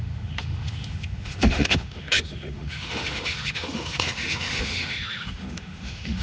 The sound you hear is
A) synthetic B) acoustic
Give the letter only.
A